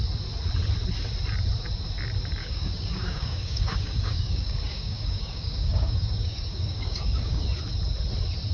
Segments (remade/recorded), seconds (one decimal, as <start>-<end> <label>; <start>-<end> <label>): 0.0-2.4 recorded; 2.4-7.4 remade; 7.4-8.5 recorded